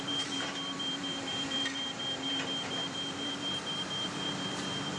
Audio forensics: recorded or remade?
remade